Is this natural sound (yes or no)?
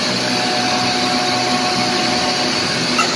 yes